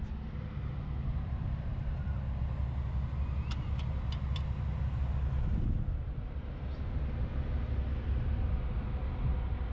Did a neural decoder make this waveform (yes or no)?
no